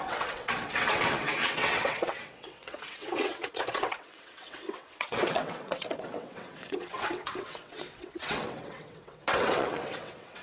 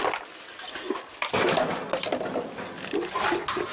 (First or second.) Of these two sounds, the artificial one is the first